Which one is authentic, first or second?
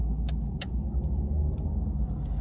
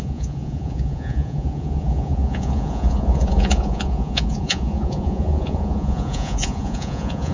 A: first